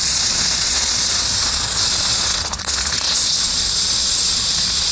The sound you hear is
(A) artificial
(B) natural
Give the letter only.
A